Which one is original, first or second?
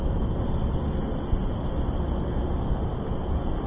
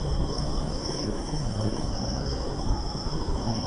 first